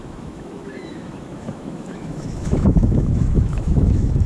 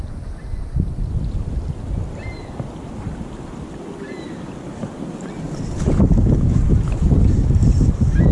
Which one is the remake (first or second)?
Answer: first